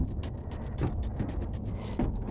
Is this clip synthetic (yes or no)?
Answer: no